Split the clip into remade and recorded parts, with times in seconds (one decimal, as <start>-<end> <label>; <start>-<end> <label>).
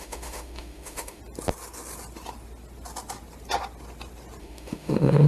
0.0-1.2 remade; 1.2-4.4 recorded; 4.4-5.3 remade